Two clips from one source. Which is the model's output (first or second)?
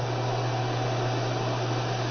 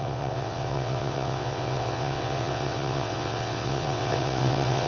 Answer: second